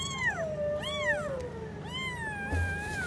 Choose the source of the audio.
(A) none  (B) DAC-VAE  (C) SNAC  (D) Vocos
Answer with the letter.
A